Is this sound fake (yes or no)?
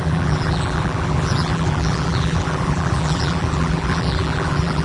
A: yes